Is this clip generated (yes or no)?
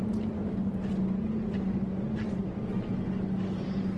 no